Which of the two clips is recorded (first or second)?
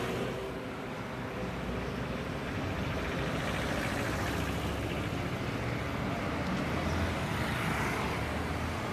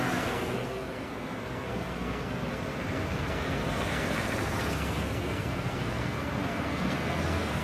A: first